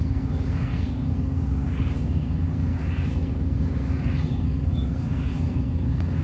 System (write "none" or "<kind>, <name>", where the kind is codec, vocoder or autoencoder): codec, SNAC